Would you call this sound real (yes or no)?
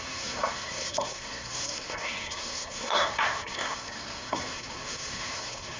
no